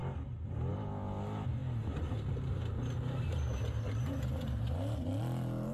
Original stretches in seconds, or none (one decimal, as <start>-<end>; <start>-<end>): 0.0-5.7